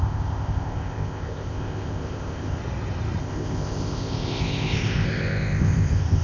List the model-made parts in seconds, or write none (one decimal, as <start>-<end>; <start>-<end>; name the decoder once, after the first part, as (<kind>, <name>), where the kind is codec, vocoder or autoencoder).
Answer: 0.0-2.6 (codec, ZipCodec); 3.2-6.2